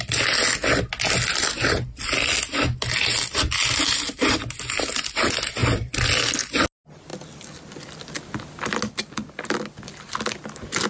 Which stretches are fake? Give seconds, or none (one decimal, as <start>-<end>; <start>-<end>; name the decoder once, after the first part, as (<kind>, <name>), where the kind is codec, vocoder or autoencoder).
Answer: none